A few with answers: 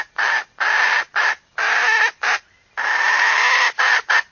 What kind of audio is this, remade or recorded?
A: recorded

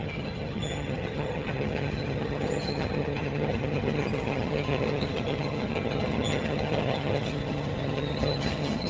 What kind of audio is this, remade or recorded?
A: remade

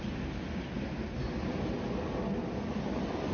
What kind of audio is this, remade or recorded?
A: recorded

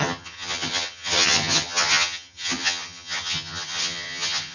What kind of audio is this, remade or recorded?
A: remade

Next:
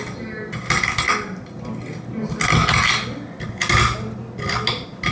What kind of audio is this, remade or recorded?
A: recorded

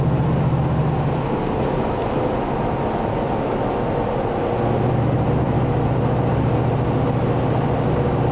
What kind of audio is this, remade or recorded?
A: recorded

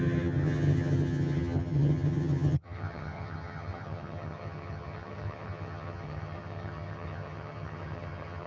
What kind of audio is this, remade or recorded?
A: remade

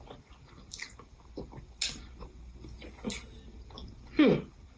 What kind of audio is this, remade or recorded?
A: recorded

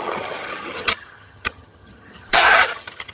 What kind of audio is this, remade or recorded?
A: remade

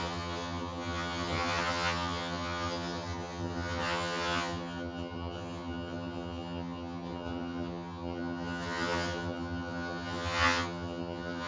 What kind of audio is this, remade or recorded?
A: remade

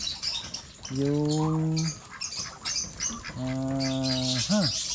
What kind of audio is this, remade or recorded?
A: recorded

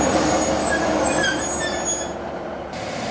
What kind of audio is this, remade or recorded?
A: recorded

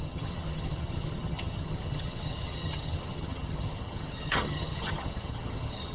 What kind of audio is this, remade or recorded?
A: remade